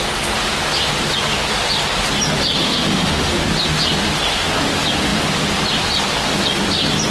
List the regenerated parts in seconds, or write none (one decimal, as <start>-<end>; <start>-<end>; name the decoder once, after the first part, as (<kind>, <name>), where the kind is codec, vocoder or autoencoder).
2.6-3.3 (autoencoder, DAC-VAE)